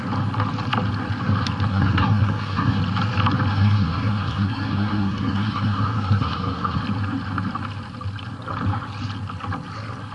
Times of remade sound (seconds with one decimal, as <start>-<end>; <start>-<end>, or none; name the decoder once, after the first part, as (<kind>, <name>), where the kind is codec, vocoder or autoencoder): 1.7-2.8 (codec, SNAC); 3.5-6.8